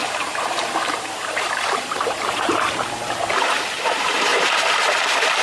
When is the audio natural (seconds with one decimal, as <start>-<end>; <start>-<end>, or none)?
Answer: 2.7-4.3; 4.8-5.4